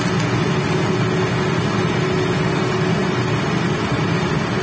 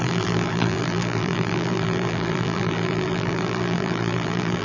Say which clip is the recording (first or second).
first